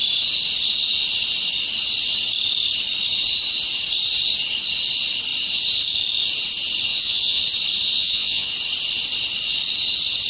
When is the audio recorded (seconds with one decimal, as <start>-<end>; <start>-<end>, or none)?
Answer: 0.0-6.9; 7.4-8.0; 8.5-10.3